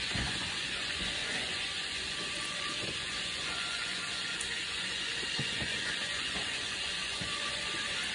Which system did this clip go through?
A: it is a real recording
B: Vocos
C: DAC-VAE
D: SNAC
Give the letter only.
B